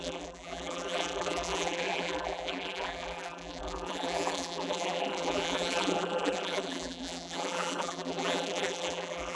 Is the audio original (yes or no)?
no